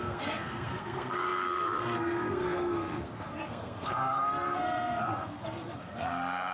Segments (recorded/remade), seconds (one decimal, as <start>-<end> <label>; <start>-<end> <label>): 0.0-6.5 remade